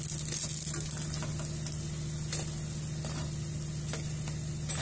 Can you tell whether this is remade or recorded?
recorded